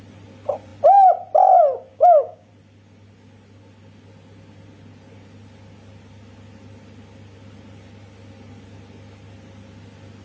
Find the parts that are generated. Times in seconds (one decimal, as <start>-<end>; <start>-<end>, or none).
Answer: 1.9-2.5

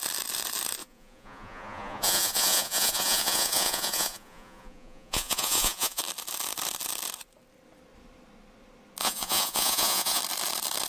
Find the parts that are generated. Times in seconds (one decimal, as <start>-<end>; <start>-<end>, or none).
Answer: 0.8-6.0; 9.0-10.2

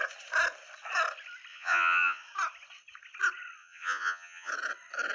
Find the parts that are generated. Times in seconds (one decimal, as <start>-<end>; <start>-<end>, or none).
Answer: 1.5-2.2; 3.6-4.5

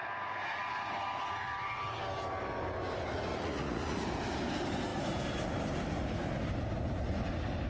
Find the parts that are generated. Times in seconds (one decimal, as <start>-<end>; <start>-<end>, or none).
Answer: 3.3-4.0

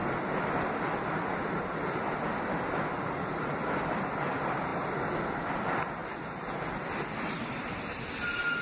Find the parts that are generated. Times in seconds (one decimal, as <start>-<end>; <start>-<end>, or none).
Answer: none

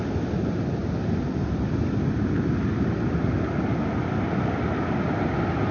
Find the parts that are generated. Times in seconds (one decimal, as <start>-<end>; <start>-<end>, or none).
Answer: none